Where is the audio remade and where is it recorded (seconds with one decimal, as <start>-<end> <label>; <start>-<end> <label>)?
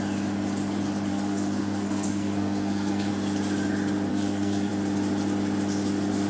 0.0-1.1 recorded; 1.1-3.1 remade; 3.1-4.1 recorded; 4.1-4.7 remade; 4.7-6.3 recorded